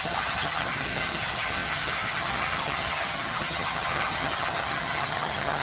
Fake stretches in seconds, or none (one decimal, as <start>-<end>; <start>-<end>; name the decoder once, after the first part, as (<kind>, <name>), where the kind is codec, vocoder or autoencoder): 0.0-5.6 (vocoder, HiFi-GAN)